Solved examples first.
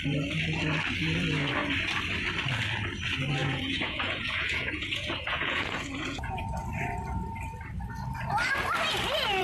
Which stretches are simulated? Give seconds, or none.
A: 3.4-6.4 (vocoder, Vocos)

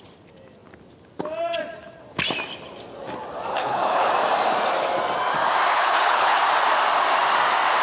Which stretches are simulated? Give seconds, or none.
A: 3.5-4.1 (codec, HILCodec); 5.7-6.4

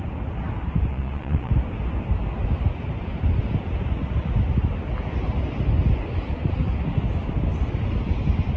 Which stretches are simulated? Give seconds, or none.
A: 0.9-1.5 (vocoder, Vocos)

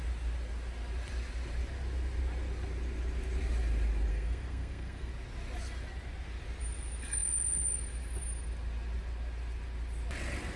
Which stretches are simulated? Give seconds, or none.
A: 4.1-5.1 (codec, SNAC)

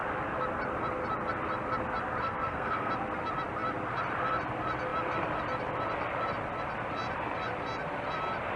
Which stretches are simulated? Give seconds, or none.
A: 2.2-2.9 (codec, SNAC)

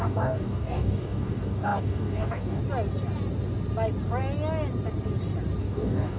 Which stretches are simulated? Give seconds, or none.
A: 0.0-2.6 (codec, DAC); 5.6-6.2

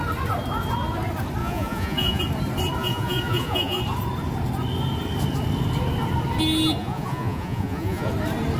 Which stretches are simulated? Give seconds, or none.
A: 1.4-2.2 (vocoder, Vocos); 2.8-3.8; 6.8-8.1